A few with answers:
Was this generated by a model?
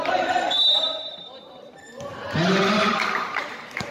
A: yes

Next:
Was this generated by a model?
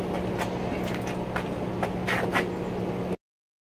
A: no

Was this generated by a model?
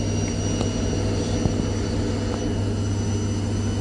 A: no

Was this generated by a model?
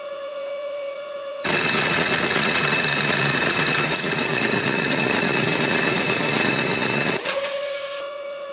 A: yes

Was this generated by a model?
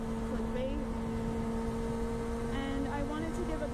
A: no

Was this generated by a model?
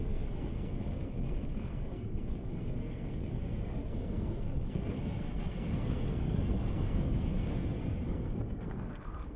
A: yes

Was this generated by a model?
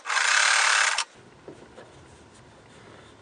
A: no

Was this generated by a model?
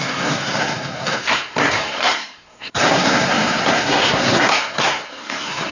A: yes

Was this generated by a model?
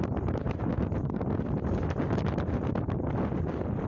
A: no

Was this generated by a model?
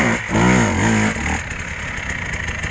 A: no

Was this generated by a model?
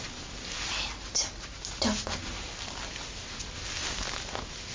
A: no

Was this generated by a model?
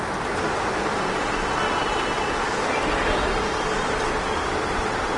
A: no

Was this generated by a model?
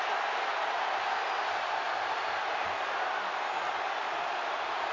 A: no